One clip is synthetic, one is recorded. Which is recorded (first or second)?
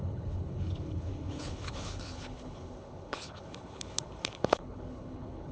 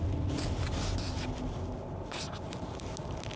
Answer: second